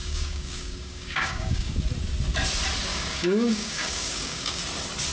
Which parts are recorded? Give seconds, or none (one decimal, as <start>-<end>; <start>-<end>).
1.8-2.9; 4.6-5.1